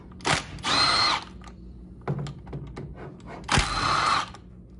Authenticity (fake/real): real